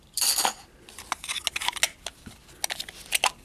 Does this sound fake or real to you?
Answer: real